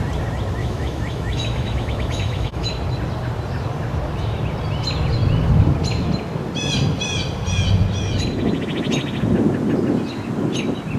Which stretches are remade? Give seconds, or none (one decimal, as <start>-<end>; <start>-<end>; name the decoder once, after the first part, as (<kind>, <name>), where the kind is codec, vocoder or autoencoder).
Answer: 0.6-2.7 (autoencoder, DAC-VAE)